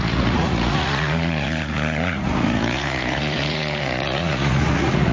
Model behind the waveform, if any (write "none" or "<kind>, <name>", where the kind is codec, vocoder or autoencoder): vocoder, Vocos